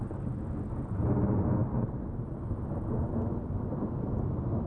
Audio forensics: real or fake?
real